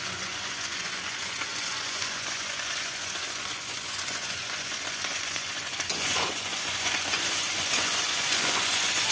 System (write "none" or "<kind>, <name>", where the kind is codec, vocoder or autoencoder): vocoder, Vocos